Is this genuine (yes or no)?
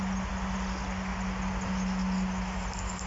yes